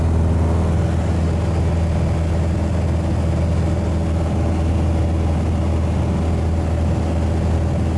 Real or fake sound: real